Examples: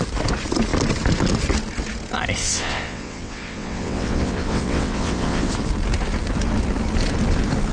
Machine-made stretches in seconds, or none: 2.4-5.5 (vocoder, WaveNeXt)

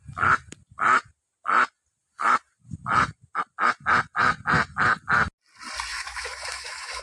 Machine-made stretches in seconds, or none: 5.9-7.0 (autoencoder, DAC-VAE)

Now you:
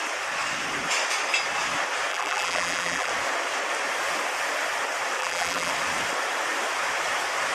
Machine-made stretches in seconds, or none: 2.1-3.1 (vocoder, BigVGAN v2); 5.2-5.7

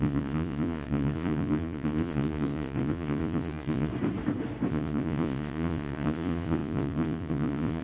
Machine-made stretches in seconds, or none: 0.0-3.9 (vocoder, Vocos); 4.7-7.8

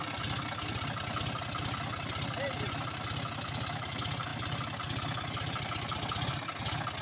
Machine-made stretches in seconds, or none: none

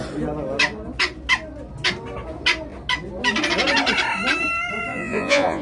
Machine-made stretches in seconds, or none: 4.9-5.6 (vocoder, Vocos)

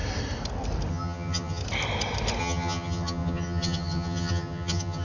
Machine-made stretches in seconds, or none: 0.9-1.6 (vocoder, HiFi-GAN); 2.4-5.0